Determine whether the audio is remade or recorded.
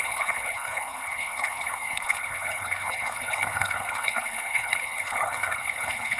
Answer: remade